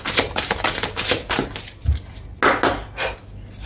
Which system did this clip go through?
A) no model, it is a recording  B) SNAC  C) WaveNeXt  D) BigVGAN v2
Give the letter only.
A